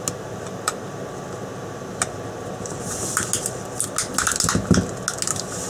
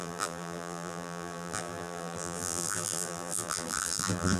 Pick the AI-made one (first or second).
second